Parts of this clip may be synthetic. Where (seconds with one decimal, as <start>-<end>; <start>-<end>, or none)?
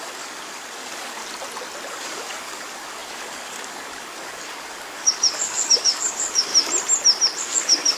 0.0-1.2; 1.9-6.5; 7.4-8.0